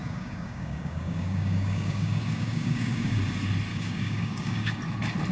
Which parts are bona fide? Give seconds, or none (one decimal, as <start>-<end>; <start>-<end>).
3.2-3.7; 4.8-5.3